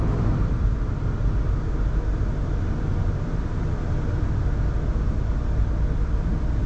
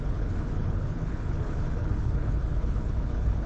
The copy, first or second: second